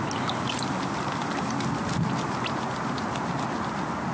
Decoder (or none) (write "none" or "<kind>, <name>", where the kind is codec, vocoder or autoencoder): none